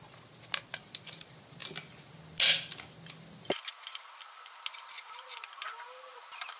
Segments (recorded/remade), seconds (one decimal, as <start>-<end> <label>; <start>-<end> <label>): 0.0-6.6 recorded